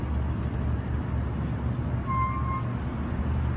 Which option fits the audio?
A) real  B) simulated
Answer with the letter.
A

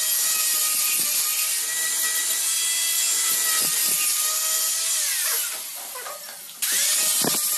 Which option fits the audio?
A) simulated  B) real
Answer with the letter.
B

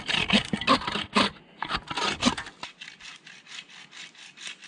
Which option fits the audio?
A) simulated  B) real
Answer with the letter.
B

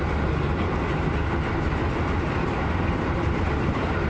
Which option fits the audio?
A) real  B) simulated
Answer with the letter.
A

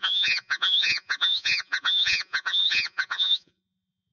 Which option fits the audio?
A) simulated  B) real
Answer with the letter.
A